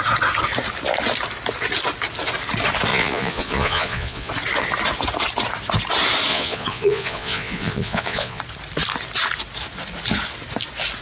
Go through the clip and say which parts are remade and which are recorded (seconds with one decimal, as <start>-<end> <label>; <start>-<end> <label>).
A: 0.0-2.9 recorded; 2.9-4.3 remade; 4.3-6.3 recorded; 6.3-8.4 remade; 8.4-11.0 recorded